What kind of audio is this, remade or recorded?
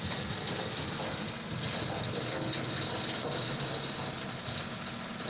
recorded